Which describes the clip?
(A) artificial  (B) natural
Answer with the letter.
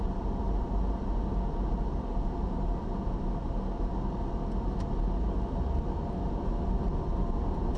B